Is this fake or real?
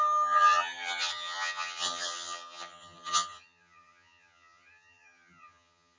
fake